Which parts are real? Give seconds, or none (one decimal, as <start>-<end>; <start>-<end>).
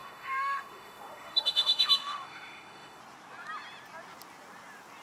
3.0-5.0